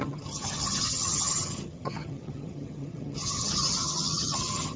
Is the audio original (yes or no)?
no